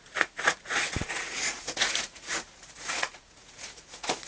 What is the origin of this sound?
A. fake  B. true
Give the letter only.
A